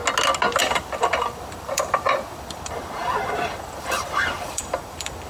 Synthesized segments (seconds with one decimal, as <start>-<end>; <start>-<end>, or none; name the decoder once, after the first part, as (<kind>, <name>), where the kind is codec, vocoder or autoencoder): 0.6-5.3 (vocoder, BigVGAN v2)